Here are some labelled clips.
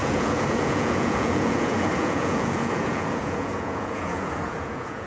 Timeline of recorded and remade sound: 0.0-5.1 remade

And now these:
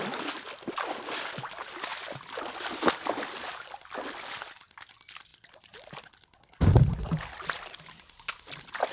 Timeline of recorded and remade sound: 0.0-8.9 recorded

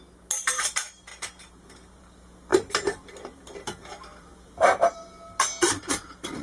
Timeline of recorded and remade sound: 0.0-2.5 recorded; 2.5-5.3 remade; 5.3-6.4 recorded